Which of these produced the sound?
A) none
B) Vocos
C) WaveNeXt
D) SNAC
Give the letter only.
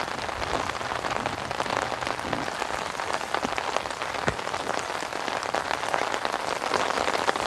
A